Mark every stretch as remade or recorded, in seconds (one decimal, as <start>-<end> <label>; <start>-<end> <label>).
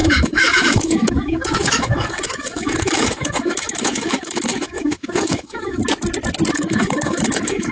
0.0-5.8 remade; 5.8-6.5 recorded; 6.5-7.7 remade